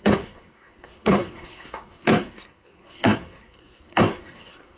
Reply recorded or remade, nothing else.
remade